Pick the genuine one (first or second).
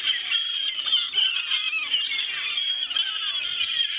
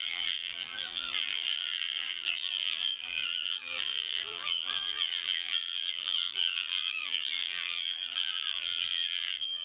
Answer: first